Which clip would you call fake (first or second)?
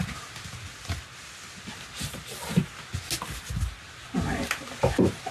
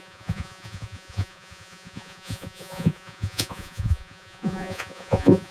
second